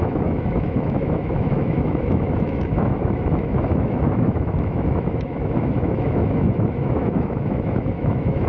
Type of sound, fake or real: fake